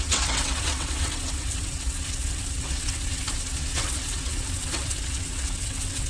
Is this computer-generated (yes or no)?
yes